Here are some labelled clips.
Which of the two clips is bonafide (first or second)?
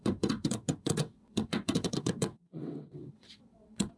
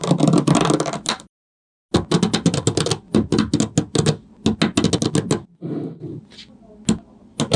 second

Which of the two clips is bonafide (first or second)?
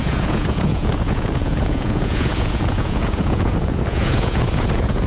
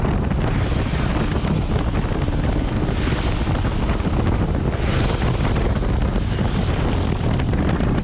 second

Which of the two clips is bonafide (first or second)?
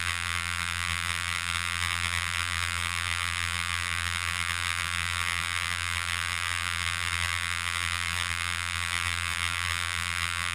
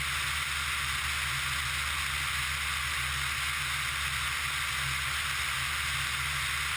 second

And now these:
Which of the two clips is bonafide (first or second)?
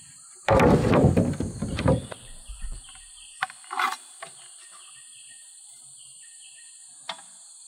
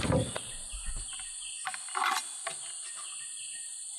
second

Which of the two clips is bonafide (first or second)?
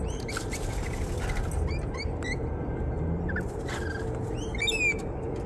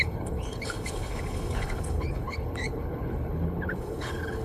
first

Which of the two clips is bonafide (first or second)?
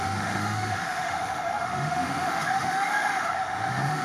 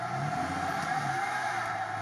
second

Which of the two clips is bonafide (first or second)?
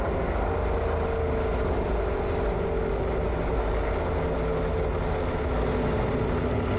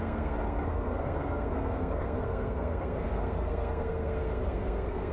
first